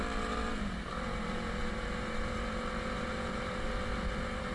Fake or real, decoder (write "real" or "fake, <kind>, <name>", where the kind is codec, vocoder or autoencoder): fake, vocoder, BigVGAN v2